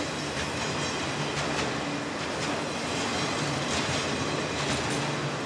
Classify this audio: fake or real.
real